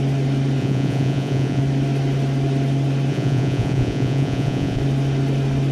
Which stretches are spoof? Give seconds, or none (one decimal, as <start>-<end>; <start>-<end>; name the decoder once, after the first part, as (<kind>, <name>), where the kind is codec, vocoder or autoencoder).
0.6-1.6 (vocoder, Vocos); 3.1-4.8